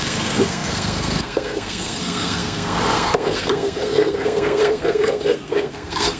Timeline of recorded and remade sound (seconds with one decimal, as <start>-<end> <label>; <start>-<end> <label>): 0.0-6.2 remade